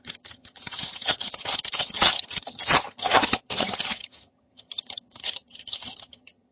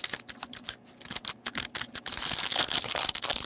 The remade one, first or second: first